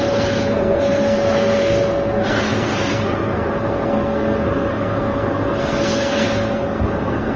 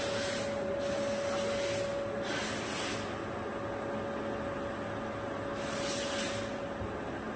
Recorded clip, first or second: second